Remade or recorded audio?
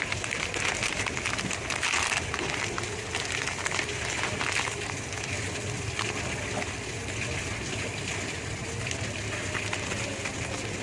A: recorded